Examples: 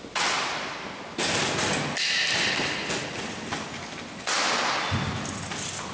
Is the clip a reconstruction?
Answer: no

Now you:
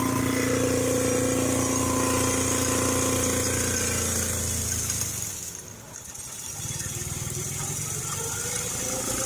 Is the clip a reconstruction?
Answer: no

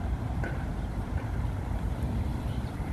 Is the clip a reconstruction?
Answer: yes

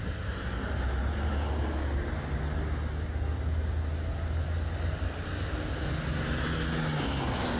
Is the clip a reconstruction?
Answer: no